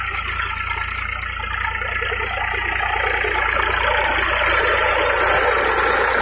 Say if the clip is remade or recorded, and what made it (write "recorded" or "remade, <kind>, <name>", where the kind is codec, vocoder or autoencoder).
recorded